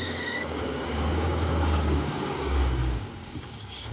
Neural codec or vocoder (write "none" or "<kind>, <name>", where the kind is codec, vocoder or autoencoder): codec, DAC